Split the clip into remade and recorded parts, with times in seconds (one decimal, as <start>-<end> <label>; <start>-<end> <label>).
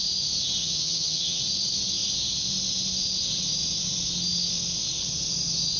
0.0-0.6 recorded; 0.6-1.4 remade; 1.4-5.8 recorded